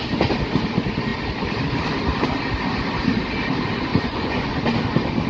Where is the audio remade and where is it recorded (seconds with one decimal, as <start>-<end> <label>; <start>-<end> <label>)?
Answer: 0.0-3.9 recorded; 3.9-4.6 remade; 4.6-5.3 recorded